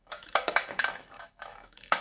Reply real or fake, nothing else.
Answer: fake